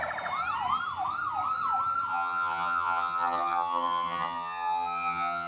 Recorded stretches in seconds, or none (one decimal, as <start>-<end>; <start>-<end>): 0.0-2.1